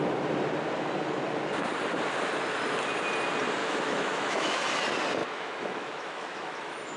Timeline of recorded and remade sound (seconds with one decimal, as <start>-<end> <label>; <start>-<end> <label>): 0.0-3.6 recorded; 3.6-4.6 remade; 4.6-5.2 recorded; 5.2-7.0 remade